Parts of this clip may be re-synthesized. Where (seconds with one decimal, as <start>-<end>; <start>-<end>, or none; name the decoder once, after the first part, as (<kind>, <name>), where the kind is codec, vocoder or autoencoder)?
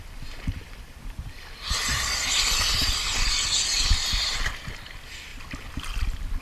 none